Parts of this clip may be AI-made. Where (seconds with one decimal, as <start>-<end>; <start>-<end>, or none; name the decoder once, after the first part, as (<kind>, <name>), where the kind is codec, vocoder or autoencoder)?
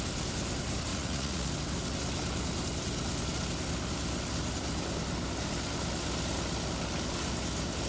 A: 0.9-1.5 (vocoder, Vocos)